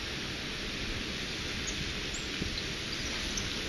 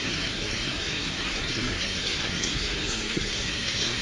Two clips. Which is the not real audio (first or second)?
second